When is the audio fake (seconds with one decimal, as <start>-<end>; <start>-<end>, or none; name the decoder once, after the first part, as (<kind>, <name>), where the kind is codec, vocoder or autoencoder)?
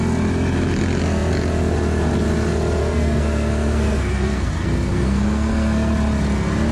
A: 2.8-5.9 (codec, SNAC)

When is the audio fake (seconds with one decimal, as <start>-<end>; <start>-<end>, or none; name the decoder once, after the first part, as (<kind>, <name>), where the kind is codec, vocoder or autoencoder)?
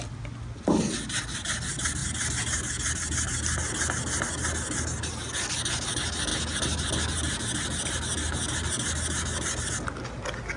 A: none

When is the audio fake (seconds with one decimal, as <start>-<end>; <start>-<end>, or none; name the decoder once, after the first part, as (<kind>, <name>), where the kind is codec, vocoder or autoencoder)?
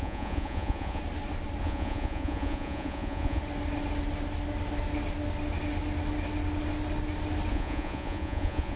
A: 0.0-1.0 (vocoder, Vocos); 1.6-3.4; 7.5-8.8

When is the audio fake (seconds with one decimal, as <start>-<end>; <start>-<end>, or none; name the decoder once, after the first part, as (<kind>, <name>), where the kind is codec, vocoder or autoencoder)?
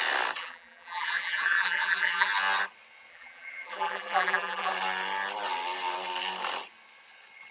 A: 0.4-2.3 (vocoder, BigVGAN v2); 3.1-4.7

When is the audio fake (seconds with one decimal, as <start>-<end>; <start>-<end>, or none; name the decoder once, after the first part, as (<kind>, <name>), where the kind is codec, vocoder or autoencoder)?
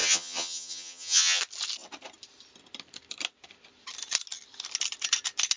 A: 0.0-1.4 (vocoder, HiFi-GAN)